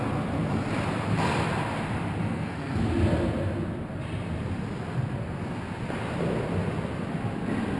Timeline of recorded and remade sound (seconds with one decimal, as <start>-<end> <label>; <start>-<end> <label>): 0.0-2.2 recorded; 2.2-2.8 remade; 2.8-7.8 recorded